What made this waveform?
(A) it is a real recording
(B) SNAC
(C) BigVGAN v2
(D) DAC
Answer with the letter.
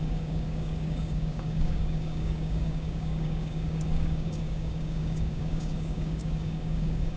D